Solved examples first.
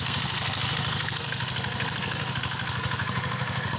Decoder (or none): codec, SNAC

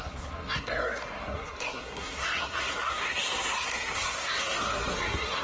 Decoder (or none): codec, SNAC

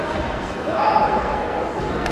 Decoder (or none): codec, SNAC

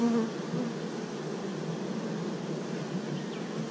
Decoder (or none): none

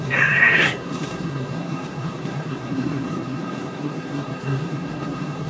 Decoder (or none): codec, SNAC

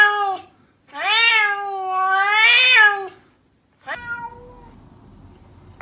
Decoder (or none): none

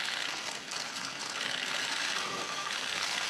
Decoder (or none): codec, SNAC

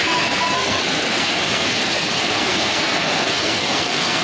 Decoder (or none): codec, SNAC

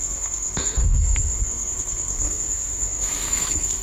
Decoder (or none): codec, SNAC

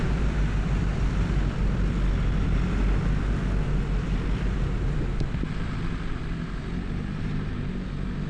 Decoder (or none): none